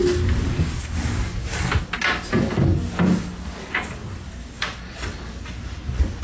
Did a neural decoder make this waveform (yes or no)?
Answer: no